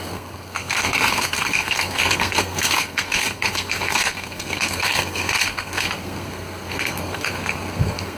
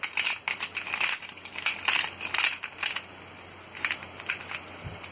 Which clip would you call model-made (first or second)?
first